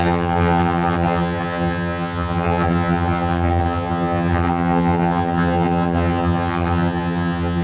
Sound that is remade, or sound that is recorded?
remade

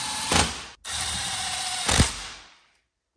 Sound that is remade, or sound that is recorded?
recorded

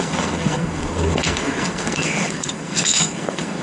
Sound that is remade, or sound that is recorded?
remade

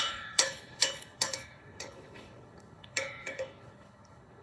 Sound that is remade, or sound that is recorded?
remade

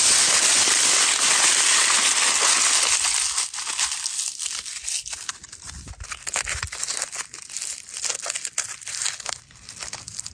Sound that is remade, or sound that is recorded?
recorded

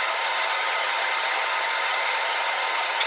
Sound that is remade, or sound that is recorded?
remade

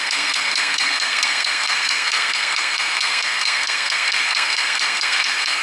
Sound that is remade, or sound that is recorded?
remade